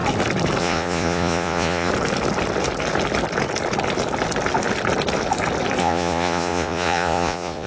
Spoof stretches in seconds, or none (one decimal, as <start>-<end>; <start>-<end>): 0.6-1.9; 5.8-7.7